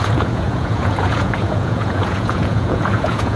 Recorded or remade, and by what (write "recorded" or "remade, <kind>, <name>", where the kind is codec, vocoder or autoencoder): remade, vocoder, Vocos